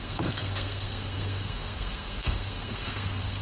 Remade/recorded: remade